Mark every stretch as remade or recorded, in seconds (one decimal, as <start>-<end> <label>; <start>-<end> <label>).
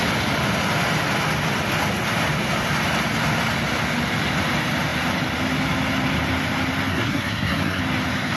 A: 0.0-6.9 recorded; 6.9-7.8 remade; 7.8-8.4 recorded